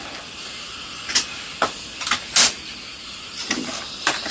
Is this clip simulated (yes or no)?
no